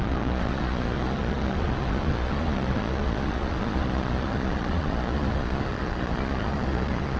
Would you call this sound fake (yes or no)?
yes